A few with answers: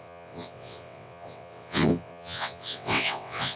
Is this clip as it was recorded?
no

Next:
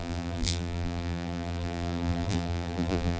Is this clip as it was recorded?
no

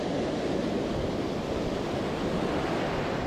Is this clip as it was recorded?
yes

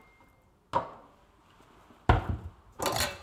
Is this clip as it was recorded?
yes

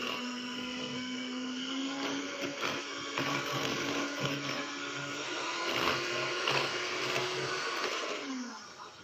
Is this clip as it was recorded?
no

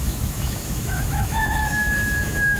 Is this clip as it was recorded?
no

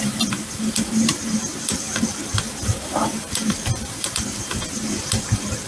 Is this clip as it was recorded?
no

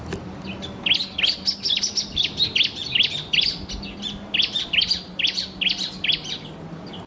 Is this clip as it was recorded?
yes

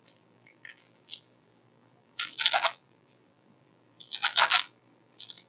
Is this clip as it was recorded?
no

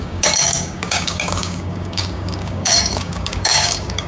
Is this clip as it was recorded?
no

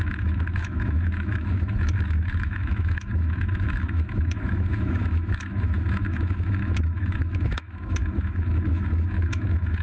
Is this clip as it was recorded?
no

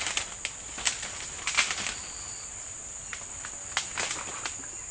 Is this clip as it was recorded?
yes